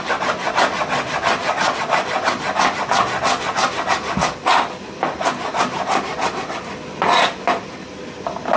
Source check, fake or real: real